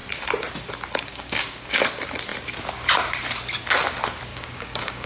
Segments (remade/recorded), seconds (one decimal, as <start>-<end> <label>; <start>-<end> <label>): 0.0-1.1 recorded; 1.1-1.8 remade; 1.8-4.3 recorded; 4.3-5.1 remade

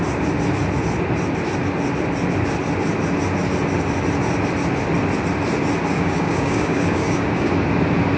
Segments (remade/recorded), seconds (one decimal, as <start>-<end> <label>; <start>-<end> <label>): 0.0-5.9 recorded; 5.9-7.5 remade; 7.5-8.2 recorded

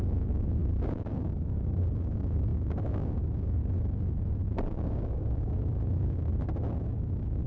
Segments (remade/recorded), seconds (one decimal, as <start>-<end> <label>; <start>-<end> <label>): 0.0-3.6 remade; 3.6-4.7 recorded; 4.7-6.3 remade; 6.3-7.0 recorded; 7.0-7.5 remade

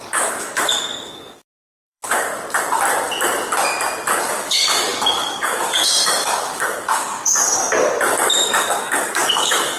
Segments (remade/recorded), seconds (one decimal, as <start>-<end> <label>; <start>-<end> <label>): 0.0-2.3 remade; 2.3-4.2 recorded; 4.2-7.6 remade; 7.6-8.3 recorded; 8.3-9.8 remade

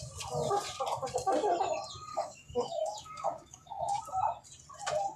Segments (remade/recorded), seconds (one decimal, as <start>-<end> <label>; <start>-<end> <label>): 0.0-2.1 recorded; 2.1-4.0 remade; 4.0-5.2 recorded

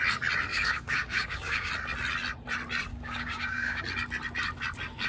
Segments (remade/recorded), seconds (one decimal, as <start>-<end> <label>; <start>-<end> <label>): 0.0-0.5 recorded; 0.5-1.7 remade; 1.7-2.9 recorded; 2.9-3.8 remade; 3.8-5.1 recorded